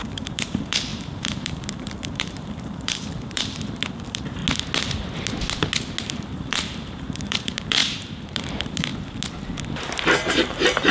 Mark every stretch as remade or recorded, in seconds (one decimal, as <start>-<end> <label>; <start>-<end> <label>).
0.0-4.4 remade; 4.4-6.0 recorded; 6.0-8.9 remade; 8.9-10.3 recorded; 10.3-10.9 remade